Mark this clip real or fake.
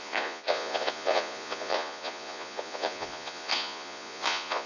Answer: fake